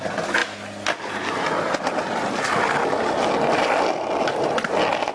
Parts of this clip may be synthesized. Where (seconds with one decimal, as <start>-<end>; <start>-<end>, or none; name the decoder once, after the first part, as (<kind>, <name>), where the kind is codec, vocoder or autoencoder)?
none